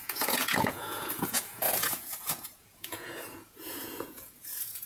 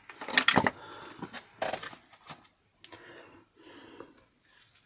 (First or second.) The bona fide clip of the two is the second